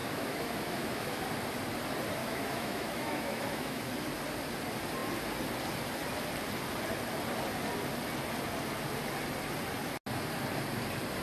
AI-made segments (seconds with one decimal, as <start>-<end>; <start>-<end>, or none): 0.0-1.2; 2.2-3.9